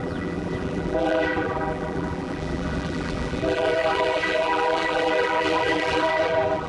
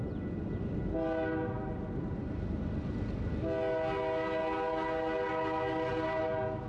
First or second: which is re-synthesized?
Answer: first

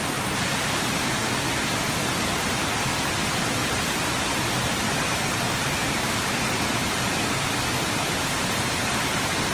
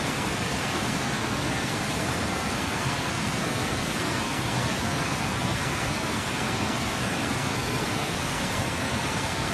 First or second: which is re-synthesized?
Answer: second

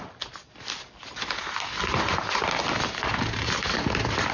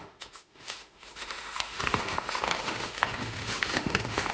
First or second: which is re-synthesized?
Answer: second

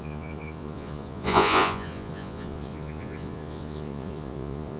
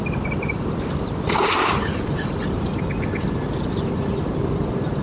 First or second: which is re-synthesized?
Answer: first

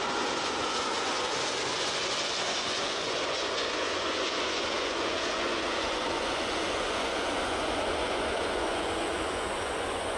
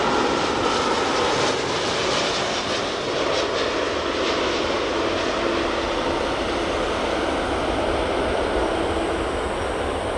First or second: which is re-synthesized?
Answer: first